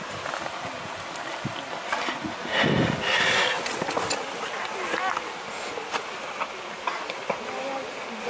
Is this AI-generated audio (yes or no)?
no